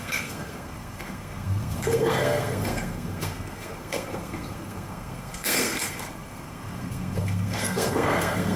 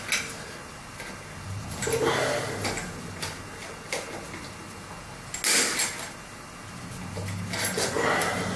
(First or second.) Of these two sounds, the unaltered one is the second